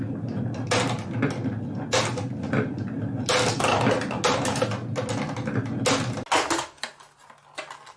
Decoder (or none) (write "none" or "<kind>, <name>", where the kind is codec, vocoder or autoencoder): none